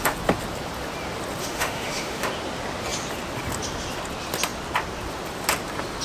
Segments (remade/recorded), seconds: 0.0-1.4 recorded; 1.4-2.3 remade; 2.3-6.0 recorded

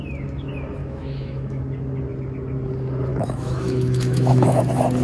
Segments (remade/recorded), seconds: 0.0-0.8 recorded; 0.8-1.6 remade; 1.6-3.1 recorded; 3.1-4.6 remade; 4.6-5.0 recorded

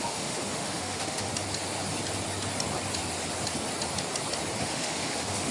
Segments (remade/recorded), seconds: 0.0-1.3 remade; 1.3-4.6 recorded; 4.6-5.5 remade

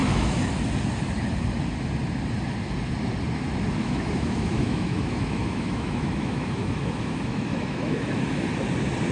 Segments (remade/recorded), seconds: 0.0-0.5 remade; 0.5-3.8 recorded; 3.8-8.5 remade; 8.5-9.1 recorded

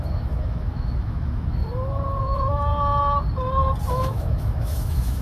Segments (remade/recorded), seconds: 0.0-1.6 remade; 1.6-2.2 recorded; 2.2-2.7 remade; 2.7-3.9 recorded; 3.9-5.2 remade

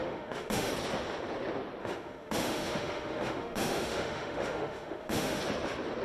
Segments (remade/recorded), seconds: 0.0-0.7 remade; 0.7-1.8 recorded; 1.8-5.4 remade; 5.4-6.0 recorded